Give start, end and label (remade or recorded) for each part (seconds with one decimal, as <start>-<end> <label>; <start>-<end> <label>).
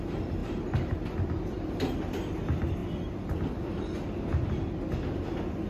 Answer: 0.0-0.4 recorded; 0.4-1.0 remade; 1.0-5.7 recorded